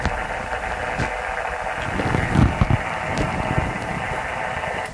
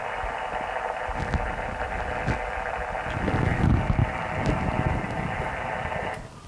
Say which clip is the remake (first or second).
first